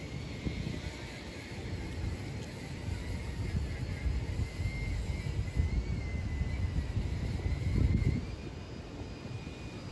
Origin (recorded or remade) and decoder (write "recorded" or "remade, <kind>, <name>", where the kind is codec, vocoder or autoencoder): recorded